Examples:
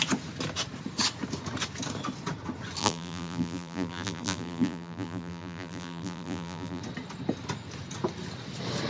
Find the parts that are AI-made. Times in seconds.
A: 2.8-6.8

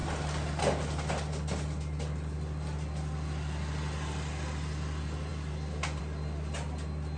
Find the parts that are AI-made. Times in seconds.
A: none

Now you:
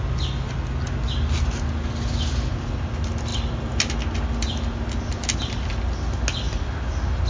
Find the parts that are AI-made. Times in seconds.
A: none

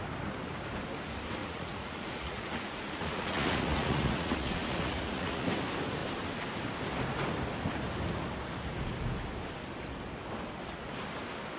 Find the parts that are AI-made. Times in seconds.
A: 1.4-5.5

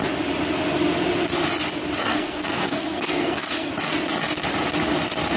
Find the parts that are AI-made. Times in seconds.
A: 2.0-3.7